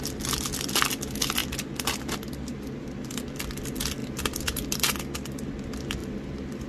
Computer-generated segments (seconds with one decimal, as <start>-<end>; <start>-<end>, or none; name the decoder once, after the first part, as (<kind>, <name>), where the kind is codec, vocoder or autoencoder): 4.0-5.0 (vocoder, BigVGAN v2); 6.0-6.7